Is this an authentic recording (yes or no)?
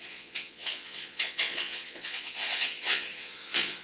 no